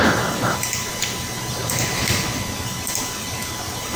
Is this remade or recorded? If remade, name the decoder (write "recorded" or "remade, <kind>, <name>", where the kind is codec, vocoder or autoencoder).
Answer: recorded